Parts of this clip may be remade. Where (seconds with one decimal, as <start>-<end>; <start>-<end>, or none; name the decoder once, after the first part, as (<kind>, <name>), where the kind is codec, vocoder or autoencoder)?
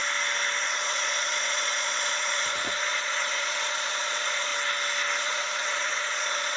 0.6-4.5 (vocoder, Vocos); 5.2-6.6